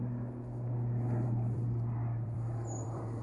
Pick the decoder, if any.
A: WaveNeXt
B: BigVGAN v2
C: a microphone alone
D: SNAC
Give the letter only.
B